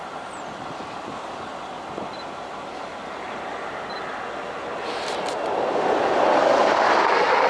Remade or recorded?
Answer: recorded